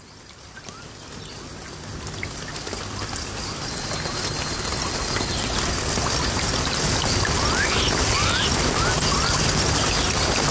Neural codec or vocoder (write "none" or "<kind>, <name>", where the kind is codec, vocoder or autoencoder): none